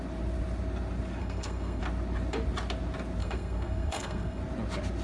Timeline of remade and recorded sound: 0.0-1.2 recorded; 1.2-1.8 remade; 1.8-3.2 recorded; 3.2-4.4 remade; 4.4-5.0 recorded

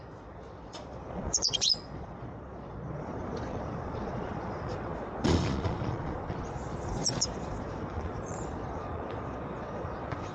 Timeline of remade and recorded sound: 0.0-10.3 remade